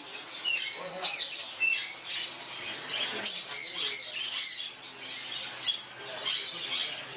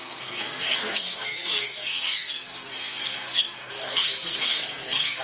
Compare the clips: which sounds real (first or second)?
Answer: first